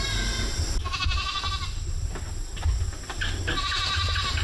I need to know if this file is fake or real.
real